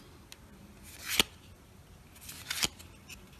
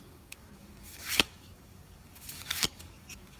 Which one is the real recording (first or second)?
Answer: first